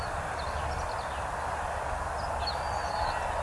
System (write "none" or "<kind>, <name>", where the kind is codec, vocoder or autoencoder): none